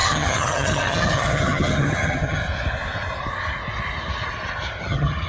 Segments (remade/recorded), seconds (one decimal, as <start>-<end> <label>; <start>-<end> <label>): 0.0-2.4 remade; 2.4-4.8 recorded; 4.8-5.3 remade